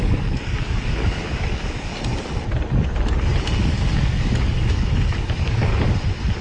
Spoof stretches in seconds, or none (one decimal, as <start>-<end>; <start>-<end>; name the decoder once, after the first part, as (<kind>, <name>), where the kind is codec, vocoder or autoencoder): 0.0-1.9 (codec, DAC); 3.6-5.7